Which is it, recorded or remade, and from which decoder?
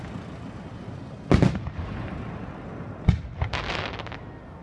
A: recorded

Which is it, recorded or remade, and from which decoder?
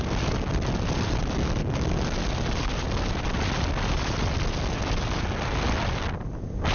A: recorded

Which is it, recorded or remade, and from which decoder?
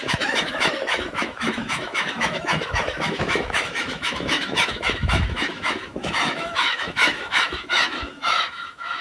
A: remade, autoencoder, DAC-VAE